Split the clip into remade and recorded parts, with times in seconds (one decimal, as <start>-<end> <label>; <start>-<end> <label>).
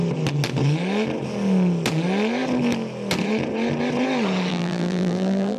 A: 0.0-4.5 recorded; 4.5-5.6 remade